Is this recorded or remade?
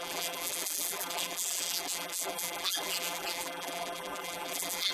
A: remade